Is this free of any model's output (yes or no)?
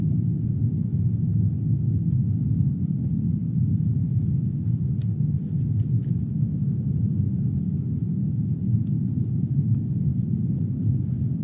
yes